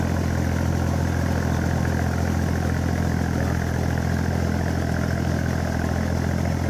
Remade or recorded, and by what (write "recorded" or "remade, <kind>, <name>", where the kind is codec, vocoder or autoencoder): recorded